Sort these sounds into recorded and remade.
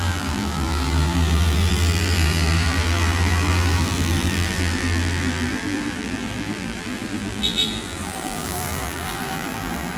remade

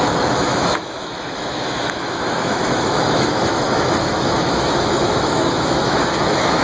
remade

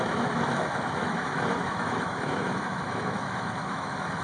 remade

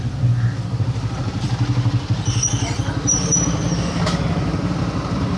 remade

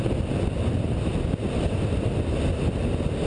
recorded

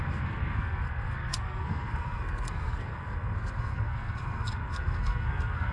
remade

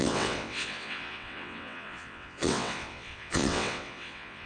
remade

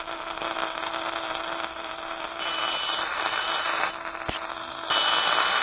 recorded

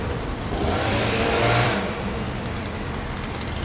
remade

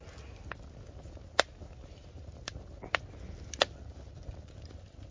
recorded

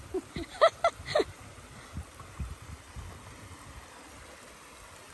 recorded